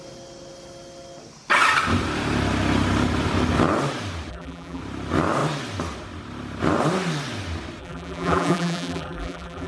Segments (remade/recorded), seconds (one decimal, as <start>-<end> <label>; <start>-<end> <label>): 0.0-4.3 recorded; 4.3-4.8 remade; 4.8-7.8 recorded; 7.8-9.7 remade